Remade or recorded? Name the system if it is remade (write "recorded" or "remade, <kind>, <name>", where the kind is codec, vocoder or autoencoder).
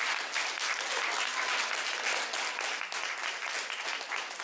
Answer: recorded